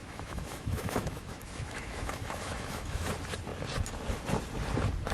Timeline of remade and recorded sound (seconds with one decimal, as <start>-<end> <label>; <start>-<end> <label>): 0.0-3.1 remade; 3.1-5.1 recorded